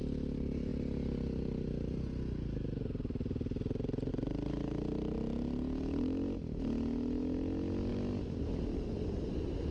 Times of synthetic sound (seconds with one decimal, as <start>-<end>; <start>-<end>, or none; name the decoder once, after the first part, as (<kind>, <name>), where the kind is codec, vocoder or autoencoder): none